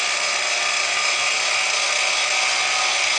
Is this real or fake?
real